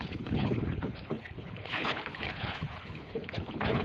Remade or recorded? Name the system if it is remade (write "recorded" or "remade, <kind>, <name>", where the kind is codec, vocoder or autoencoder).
remade, codec, HILCodec